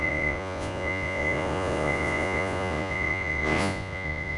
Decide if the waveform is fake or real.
fake